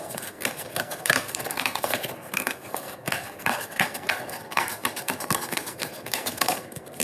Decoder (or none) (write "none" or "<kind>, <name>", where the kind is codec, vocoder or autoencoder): codec, SNAC